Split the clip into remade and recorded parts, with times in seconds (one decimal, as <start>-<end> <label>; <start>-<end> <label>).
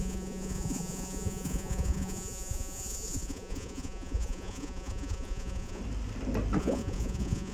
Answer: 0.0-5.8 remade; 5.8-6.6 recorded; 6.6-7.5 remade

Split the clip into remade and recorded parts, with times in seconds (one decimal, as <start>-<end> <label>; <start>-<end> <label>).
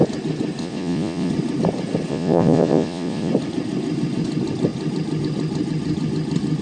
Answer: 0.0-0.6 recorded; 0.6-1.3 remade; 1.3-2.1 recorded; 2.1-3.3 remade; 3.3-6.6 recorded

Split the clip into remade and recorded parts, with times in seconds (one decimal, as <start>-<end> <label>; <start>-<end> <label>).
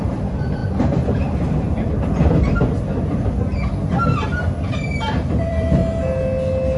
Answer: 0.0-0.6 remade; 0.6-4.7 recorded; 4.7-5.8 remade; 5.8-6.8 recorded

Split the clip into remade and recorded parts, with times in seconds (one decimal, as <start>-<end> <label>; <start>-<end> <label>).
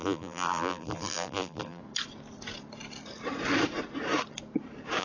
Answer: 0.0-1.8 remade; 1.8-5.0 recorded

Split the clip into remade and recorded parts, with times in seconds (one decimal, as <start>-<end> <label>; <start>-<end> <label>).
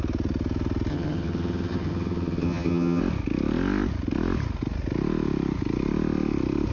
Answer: 0.0-0.9 recorded; 0.9-3.0 remade; 3.0-6.7 recorded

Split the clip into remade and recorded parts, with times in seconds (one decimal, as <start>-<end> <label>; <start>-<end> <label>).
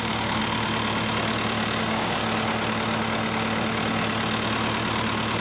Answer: 0.0-0.4 remade; 0.4-1.8 recorded; 1.8-2.2 remade; 2.2-5.4 recorded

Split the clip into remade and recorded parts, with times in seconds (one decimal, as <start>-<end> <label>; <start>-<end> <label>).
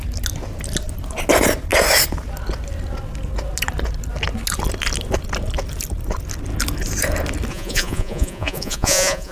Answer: 0.0-7.5 recorded; 7.5-9.3 remade